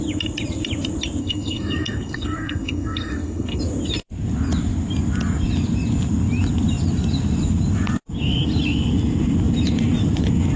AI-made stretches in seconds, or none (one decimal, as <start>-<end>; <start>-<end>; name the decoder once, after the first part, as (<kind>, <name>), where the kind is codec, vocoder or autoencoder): 1.2-3.6 (codec, SNAC)